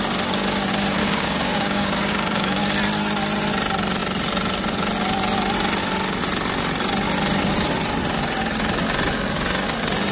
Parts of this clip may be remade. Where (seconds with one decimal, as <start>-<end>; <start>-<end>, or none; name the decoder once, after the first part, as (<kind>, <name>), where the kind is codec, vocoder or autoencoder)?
1.0-2.6 (codec, DAC)